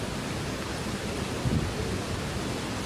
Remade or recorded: recorded